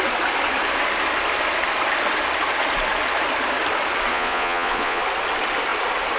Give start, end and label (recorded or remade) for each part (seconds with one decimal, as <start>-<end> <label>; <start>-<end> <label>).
0.0-4.1 recorded; 4.1-5.0 remade; 5.0-6.2 recorded